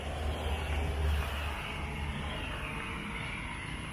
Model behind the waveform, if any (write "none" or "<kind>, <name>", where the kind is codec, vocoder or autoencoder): none